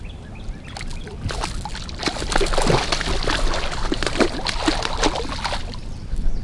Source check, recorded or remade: recorded